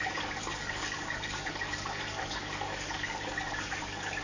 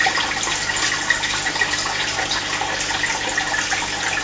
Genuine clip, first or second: second